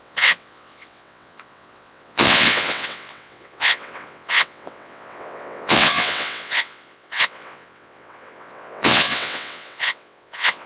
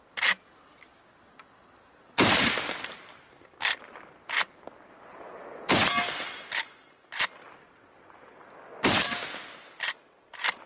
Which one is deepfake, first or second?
first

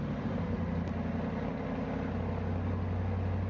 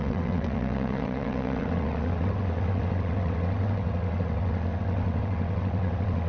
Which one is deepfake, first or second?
second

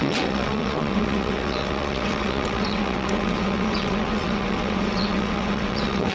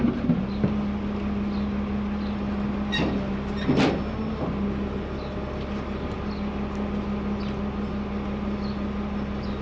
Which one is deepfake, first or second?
first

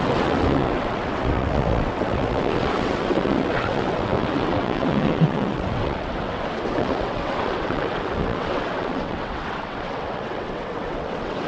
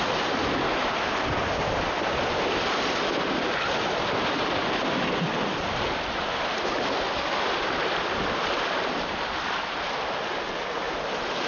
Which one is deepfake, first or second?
first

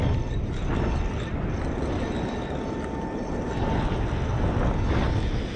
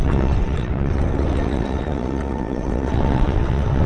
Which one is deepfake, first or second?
second